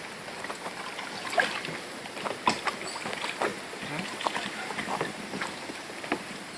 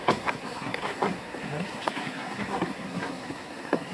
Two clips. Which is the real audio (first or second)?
first